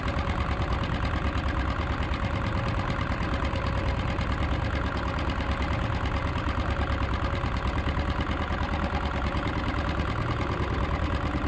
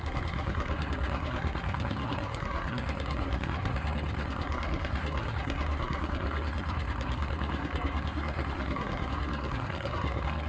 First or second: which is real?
first